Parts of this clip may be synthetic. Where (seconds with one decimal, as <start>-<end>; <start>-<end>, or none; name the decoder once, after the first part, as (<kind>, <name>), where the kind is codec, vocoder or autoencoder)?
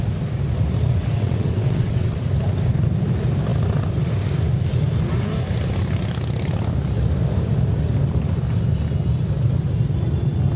1.0-2.2 (vocoder, WaveNeXt)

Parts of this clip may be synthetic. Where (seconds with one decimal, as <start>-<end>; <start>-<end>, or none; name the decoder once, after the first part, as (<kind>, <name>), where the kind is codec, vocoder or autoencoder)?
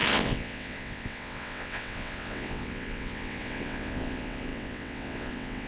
0.0-5.7 (vocoder, WaveNeXt)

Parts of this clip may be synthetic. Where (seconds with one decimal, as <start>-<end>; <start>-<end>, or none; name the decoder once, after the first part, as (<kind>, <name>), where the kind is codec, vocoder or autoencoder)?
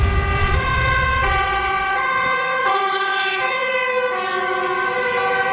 0.4-3.7 (vocoder, WaveNeXt)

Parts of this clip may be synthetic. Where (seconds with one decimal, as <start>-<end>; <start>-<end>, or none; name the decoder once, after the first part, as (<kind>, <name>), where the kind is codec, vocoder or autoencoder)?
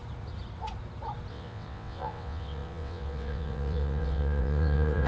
1.3-5.1 (vocoder, WaveNeXt)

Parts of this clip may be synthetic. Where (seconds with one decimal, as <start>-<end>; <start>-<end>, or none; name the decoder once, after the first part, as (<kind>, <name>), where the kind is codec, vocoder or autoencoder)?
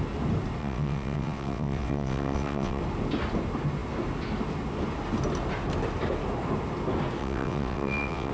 0.6-2.8 (vocoder, WaveNeXt); 7.2-8.3